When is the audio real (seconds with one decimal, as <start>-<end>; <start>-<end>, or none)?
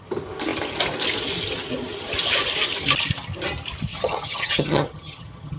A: 0.0-3.9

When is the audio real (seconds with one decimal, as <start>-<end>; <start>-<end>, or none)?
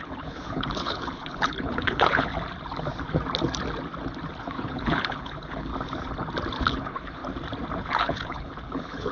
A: 2.3-4.4; 5.7-6.6; 7.2-7.8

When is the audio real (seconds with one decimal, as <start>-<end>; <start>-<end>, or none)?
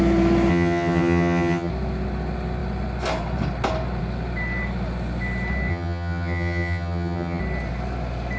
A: 0.0-0.5; 1.7-5.7; 7.4-8.4